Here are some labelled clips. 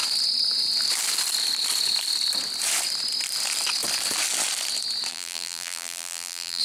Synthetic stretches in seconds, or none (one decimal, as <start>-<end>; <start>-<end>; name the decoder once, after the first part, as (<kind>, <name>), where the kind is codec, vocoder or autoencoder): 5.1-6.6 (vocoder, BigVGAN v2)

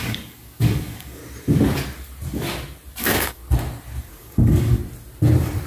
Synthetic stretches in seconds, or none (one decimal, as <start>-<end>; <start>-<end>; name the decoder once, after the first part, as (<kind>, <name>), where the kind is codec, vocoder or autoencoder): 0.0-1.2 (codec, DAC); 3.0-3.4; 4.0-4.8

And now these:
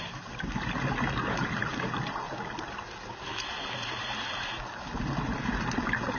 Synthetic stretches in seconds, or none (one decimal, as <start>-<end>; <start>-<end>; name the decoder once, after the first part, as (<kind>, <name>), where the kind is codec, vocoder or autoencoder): none

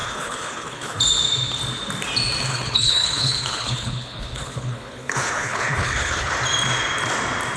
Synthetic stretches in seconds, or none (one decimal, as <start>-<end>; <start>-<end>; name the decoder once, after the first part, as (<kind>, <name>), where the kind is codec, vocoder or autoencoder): 0.0-1.0 (codec, HILCodec); 2.5-6.3